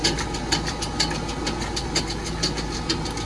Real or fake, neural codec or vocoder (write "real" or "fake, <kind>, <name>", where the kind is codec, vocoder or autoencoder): real